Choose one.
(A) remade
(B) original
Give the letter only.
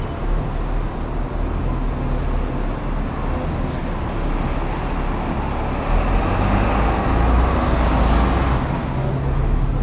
B